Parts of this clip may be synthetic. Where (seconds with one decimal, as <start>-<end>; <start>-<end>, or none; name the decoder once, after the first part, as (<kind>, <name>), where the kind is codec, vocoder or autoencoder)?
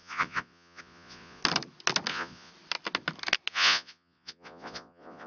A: 0.0-1.4 (vocoder, Vocos); 2.1-2.5; 3.5-5.3